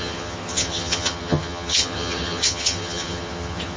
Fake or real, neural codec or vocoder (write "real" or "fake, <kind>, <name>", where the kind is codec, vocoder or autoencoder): fake, vocoder, HiFi-GAN